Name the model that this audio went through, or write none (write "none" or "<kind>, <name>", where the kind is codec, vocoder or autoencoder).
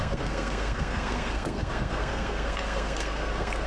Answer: codec, SNAC